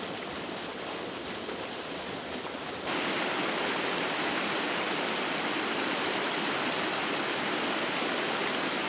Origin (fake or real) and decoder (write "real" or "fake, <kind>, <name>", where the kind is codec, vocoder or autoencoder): real